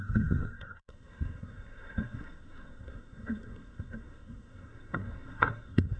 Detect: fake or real fake